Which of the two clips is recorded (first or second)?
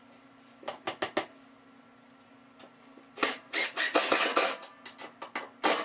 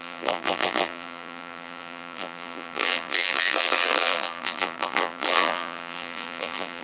first